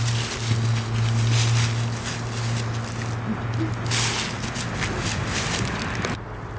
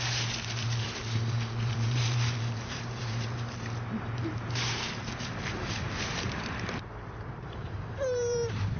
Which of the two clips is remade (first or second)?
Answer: second